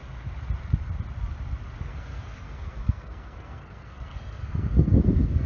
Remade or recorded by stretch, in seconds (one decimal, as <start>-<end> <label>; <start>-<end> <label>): 0.0-1.8 recorded; 1.8-5.5 remade